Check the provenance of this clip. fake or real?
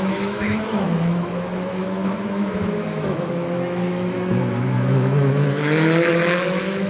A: fake